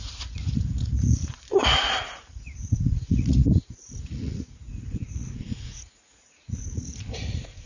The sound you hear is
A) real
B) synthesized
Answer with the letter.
B